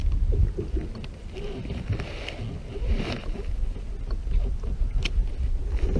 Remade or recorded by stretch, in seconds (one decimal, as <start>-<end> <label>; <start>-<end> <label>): 0.0-6.0 recorded

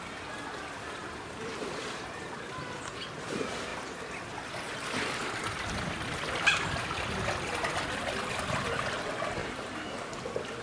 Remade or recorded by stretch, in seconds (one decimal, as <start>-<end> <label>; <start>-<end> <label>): 0.0-1.0 recorded; 1.0-2.3 remade; 2.3-9.4 recorded; 9.4-10.1 remade; 10.1-10.6 recorded

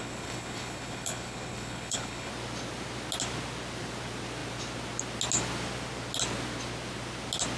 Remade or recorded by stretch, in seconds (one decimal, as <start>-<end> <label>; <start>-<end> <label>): 0.0-2.3 remade; 2.3-7.6 recorded

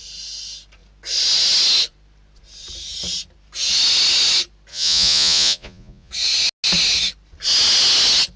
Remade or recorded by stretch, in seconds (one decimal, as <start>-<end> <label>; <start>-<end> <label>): 0.0-4.7 recorded; 4.7-6.1 remade; 6.1-8.4 recorded

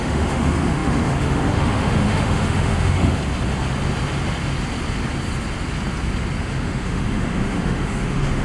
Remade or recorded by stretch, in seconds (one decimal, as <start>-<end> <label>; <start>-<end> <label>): 0.0-3.2 remade; 3.2-6.4 recorded; 6.4-8.4 remade

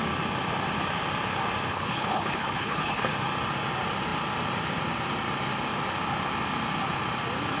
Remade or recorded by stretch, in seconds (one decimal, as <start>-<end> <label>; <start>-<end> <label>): 0.0-1.7 recorded; 1.7-3.1 remade; 3.1-7.6 recorded

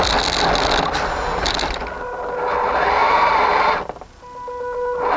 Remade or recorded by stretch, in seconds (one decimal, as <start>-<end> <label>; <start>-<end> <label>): 0.0-5.2 recorded

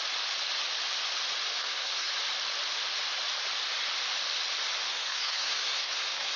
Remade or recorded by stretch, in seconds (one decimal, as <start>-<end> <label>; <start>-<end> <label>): 0.0-1.6 recorded; 1.6-2.1 remade; 2.1-4.9 recorded; 4.9-6.4 remade